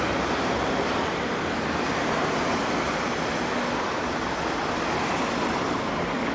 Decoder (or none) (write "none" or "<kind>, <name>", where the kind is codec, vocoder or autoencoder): none